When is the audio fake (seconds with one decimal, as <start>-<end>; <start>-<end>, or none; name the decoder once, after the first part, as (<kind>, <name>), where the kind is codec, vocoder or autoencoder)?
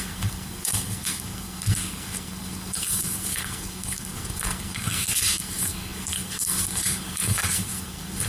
0.0-8.3 (codec, SNAC)